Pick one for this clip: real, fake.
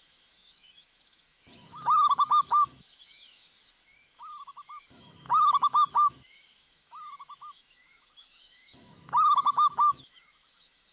fake